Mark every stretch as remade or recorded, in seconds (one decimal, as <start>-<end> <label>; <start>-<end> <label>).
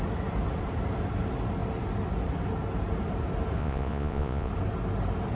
0.0-3.6 recorded; 3.6-4.5 remade; 4.5-5.3 recorded